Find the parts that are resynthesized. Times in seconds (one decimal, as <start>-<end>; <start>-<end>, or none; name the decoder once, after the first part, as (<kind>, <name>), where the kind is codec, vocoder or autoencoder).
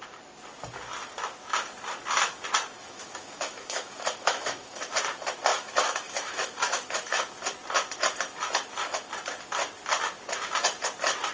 2.8-4.9 (autoencoder, DAC-VAE); 5.5-7.2